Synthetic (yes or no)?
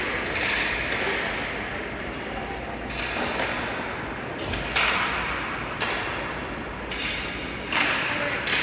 no